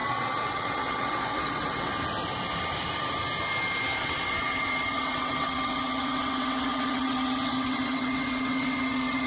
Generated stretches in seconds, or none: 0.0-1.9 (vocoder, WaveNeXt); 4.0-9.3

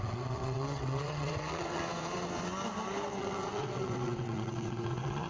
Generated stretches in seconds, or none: 0.0-1.8 (vocoder, WaveNeXt); 3.1-5.3

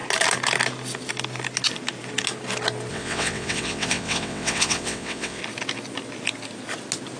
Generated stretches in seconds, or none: 2.9-5.4 (vocoder, WaveNeXt)

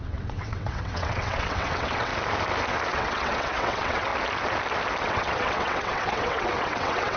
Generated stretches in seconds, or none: 0.0-2.1 (vocoder, WaveNeXt); 2.9-4.1; 5.0-7.2

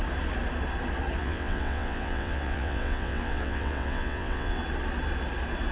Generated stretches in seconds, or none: 1.2-4.6 (vocoder, WaveNeXt)

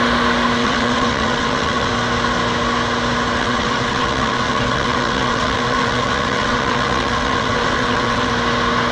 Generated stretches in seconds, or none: 0.6-1.9 (vocoder, WaveNeXt); 3.4-8.3

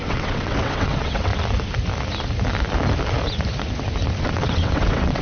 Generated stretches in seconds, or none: 0.0-1.3 (vocoder, WaveNeXt); 4.2-5.2

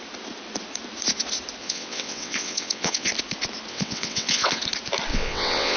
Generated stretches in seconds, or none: 1.6-3.1 (vocoder, WaveNeXt); 3.7-4.6; 5.1-5.8